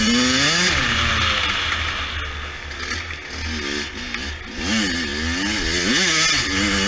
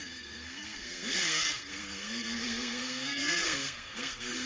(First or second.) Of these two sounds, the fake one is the second